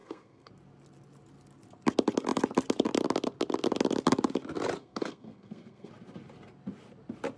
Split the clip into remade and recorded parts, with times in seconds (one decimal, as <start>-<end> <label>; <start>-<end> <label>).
0.0-0.5 remade; 0.5-4.8 recorded; 4.8-5.9 remade; 5.9-7.4 recorded